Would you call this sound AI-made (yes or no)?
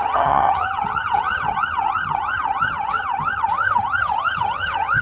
yes